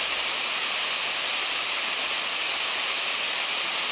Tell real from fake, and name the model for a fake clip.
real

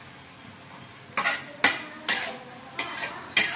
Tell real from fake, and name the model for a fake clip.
real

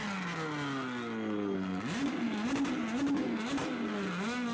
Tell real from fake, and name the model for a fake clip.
real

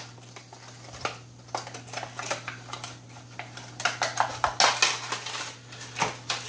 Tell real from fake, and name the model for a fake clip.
real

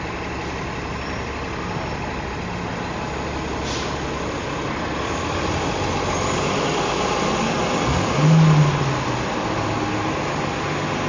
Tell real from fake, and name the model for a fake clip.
real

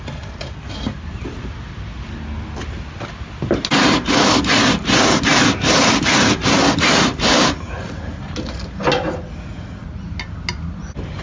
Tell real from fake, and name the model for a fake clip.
real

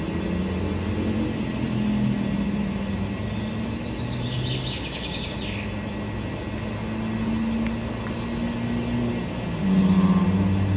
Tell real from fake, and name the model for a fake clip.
real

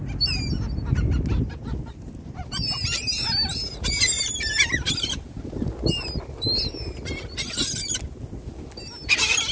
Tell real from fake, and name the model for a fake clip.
real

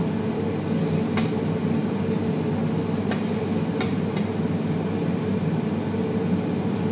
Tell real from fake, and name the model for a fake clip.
real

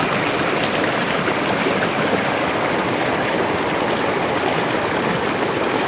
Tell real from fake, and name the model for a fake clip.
real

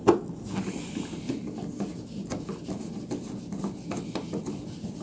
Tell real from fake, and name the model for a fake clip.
real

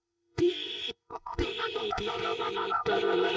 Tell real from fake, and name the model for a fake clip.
fake, codec, ZipCodec